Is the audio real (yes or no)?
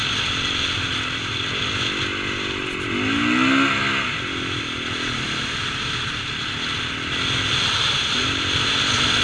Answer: yes